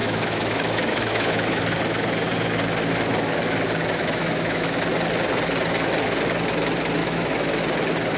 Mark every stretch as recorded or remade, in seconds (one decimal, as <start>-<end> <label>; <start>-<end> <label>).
0.0-1.6 remade; 1.6-3.8 recorded; 3.8-4.8 remade; 4.8-7.0 recorded; 7.0-7.6 remade; 7.6-8.2 recorded